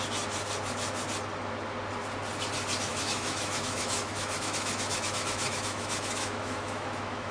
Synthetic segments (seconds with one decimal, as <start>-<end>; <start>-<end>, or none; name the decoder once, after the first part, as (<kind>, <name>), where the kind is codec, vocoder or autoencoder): 2.9-7.3 (autoencoder, DAC-VAE)